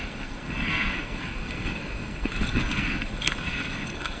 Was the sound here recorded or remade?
remade